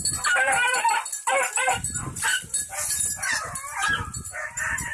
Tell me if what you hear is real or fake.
fake